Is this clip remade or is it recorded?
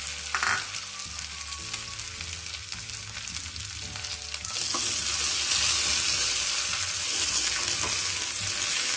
recorded